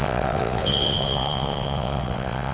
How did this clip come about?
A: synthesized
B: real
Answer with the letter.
A